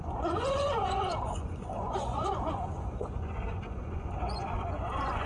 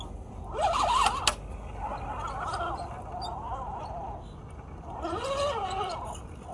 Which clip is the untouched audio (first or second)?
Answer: second